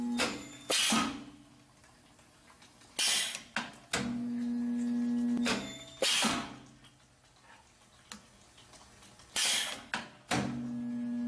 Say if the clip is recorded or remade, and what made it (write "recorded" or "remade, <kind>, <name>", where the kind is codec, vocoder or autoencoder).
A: recorded